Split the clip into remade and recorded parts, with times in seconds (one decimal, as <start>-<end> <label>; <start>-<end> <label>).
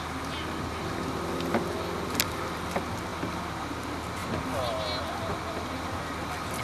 0.0-6.6 recorded